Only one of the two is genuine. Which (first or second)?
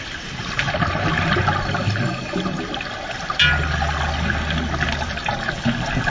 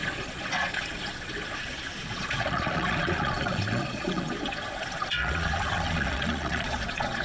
first